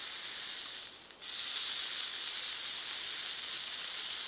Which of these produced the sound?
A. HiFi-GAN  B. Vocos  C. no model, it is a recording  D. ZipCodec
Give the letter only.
C